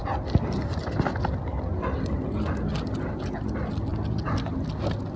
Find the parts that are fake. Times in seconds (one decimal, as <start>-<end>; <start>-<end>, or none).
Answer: none